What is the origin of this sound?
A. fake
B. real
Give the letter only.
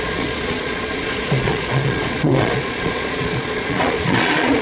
A